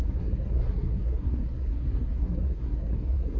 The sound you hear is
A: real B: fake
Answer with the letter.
B